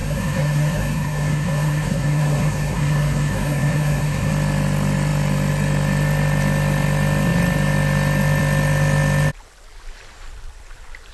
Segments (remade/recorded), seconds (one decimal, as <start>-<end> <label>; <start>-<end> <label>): 0.0-4.3 remade; 4.3-11.1 recorded